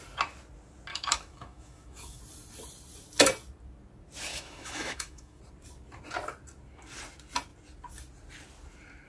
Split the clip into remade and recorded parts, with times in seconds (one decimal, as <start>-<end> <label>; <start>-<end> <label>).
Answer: 0.0-0.9 recorded; 0.9-2.2 remade; 2.2-4.3 recorded; 4.3-5.4 remade; 5.4-9.1 recorded